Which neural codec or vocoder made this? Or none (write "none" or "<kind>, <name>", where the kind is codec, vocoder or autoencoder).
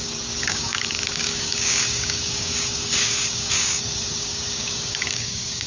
codec, DAC